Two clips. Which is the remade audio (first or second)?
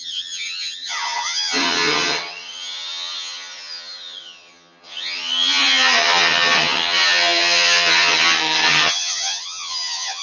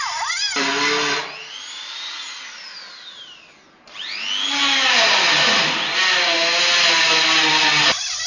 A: first